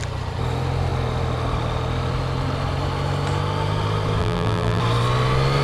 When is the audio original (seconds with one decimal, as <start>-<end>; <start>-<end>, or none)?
0.0-4.2; 4.8-5.6